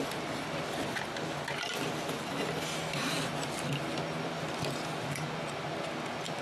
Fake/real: real